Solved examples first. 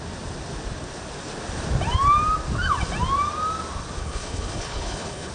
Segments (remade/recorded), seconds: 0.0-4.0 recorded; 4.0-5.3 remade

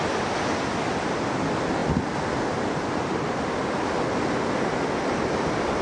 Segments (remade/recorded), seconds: 0.0-5.8 recorded

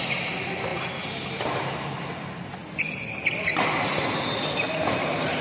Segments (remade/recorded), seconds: 0.0-5.4 recorded

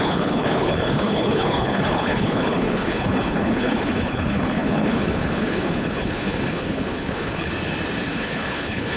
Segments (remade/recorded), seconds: 0.0-7.5 remade; 7.5-8.1 recorded; 8.1-9.0 remade

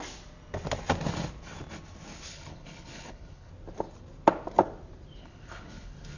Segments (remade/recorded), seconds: 0.0-2.3 recorded; 2.3-3.5 remade; 3.5-5.2 recorded; 5.2-6.2 remade

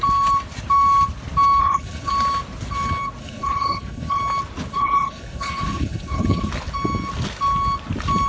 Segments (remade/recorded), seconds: 0.0-1.6 recorded; 1.6-2.1 remade; 2.1-3.2 recorded; 3.2-4.2 remade; 4.2-4.7 recorded; 4.7-6.5 remade; 6.5-8.3 recorded